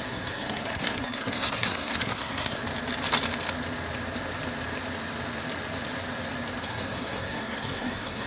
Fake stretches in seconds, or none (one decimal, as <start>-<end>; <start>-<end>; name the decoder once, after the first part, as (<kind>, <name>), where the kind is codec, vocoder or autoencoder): 0.0-2.6 (codec, SNAC); 6.6-8.3